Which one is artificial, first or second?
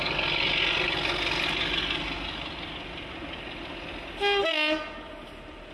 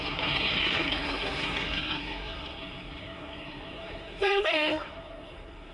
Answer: second